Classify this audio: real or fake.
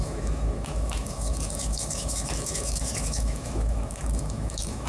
fake